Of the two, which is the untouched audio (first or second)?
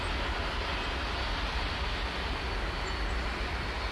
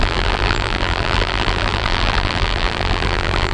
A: first